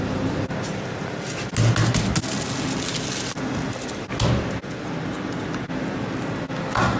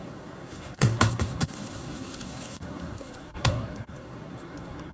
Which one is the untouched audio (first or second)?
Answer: first